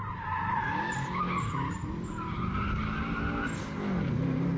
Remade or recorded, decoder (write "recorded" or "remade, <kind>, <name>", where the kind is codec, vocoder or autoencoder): recorded